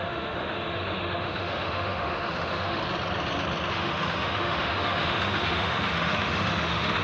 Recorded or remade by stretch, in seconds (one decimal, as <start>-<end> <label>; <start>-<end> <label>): 0.0-2.8 remade; 2.8-3.7 recorded; 3.7-7.0 remade